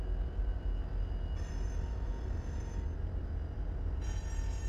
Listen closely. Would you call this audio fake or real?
real